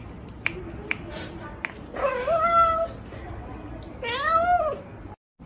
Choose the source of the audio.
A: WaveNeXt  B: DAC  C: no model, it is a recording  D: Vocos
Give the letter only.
C